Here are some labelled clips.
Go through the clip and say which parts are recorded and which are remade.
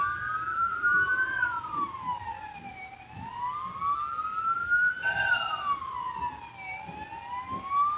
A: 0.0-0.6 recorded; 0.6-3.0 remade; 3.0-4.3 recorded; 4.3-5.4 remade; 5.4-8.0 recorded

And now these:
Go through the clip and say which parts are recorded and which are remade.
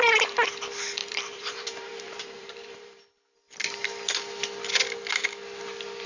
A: 0.0-1.0 recorded; 1.0-3.0 remade; 3.0-6.1 recorded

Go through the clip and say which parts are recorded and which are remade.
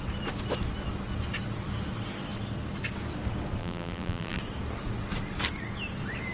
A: 0.0-3.6 recorded; 3.6-4.4 remade; 4.4-6.3 recorded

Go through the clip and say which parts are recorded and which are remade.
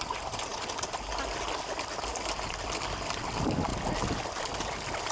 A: 0.0-0.5 remade; 0.5-2.1 recorded; 2.1-3.7 remade; 3.7-4.4 recorded; 4.4-5.1 remade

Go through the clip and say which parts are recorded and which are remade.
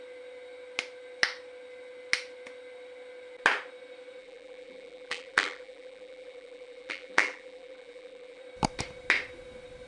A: 0.0-4.2 recorded; 4.2-8.4 remade; 8.4-9.9 recorded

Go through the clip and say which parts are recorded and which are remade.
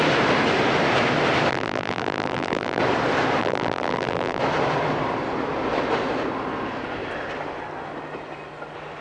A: 0.0-1.5 recorded; 1.5-2.8 remade; 2.8-3.4 recorded; 3.4-4.4 remade; 4.4-9.0 recorded